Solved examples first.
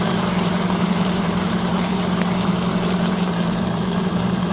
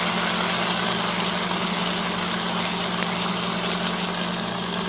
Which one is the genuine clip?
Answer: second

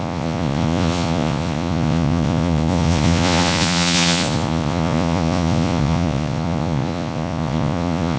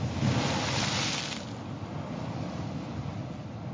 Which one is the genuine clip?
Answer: second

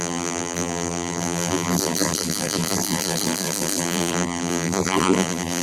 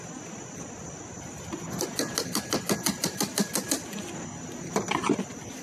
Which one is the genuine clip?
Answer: second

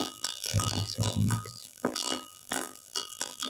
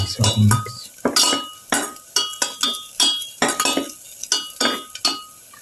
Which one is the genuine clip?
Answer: second